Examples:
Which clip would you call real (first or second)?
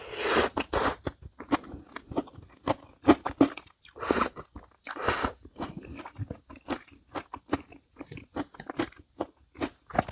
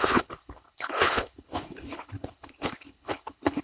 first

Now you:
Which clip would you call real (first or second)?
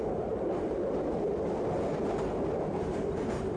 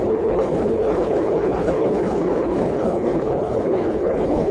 first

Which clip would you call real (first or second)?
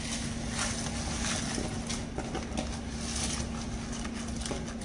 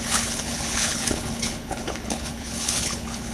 first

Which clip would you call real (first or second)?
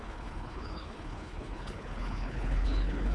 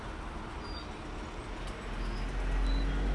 second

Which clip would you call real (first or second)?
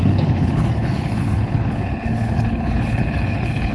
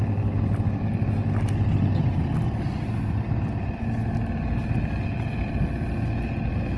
second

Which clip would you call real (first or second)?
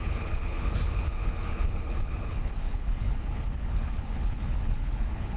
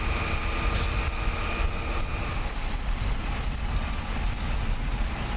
second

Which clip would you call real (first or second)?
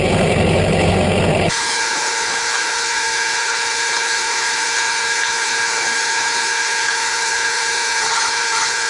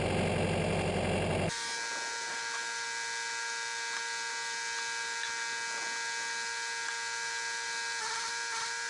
second